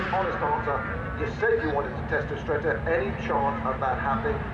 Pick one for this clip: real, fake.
real